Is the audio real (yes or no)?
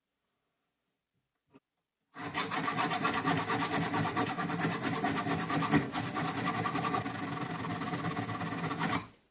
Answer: yes